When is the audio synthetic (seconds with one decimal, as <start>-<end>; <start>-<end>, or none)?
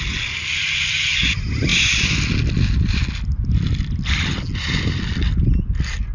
none